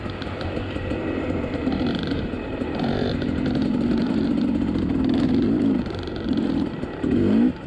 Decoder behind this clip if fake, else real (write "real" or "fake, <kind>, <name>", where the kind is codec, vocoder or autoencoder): fake, vocoder, BigVGAN v2